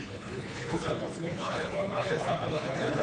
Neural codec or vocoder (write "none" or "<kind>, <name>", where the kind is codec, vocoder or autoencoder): codec, HILCodec